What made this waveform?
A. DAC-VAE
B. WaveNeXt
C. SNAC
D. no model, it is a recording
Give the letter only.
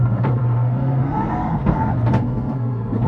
C